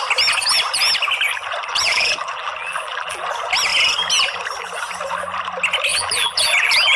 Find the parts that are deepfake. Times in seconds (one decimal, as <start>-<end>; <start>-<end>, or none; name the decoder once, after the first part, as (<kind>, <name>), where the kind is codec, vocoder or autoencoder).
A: 1.7-3.2 (vocoder, BigVGAN v2); 5.9-7.0